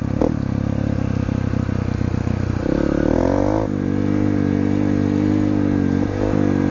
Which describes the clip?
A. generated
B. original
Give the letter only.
B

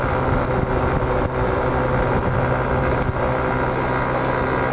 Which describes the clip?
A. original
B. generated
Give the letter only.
A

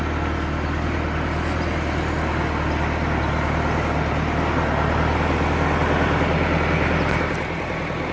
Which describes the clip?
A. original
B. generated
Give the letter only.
A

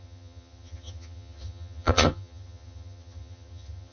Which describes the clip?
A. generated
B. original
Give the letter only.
A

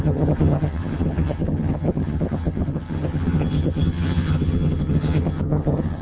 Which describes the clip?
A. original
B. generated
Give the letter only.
B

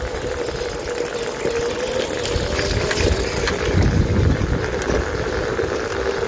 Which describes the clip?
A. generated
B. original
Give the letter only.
B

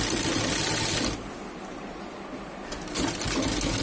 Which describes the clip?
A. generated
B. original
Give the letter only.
B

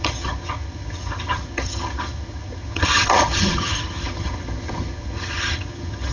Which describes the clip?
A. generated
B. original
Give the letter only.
A